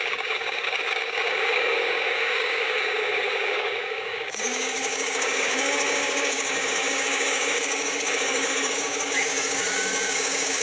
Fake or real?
fake